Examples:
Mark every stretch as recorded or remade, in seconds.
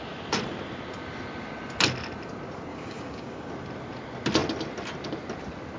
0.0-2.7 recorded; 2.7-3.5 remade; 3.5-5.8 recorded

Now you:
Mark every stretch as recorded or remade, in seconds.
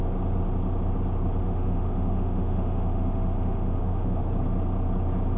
0.0-1.4 recorded; 1.4-4.2 remade; 4.2-5.4 recorded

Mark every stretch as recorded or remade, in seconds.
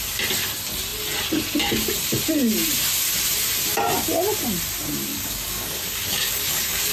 0.0-5.1 recorded; 5.1-6.9 remade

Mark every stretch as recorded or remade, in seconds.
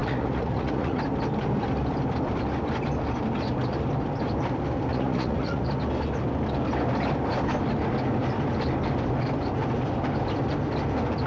0.0-1.0 remade; 1.0-4.9 recorded; 4.9-5.6 remade; 5.6-11.3 recorded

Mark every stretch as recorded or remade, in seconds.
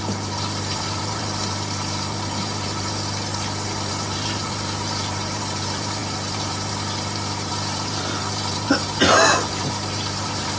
0.0-3.3 remade; 3.3-3.9 recorded; 3.9-10.6 remade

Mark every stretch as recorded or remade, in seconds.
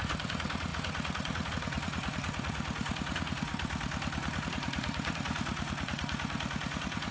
0.0-3.5 remade; 3.5-4.4 recorded; 4.4-7.1 remade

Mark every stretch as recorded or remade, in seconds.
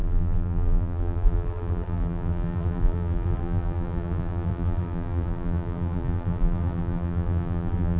0.0-8.0 remade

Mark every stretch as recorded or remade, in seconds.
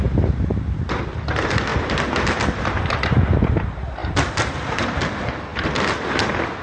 0.0-1.7 remade; 1.7-2.4 recorded; 2.4-5.5 remade; 5.5-6.0 recorded; 6.0-6.6 remade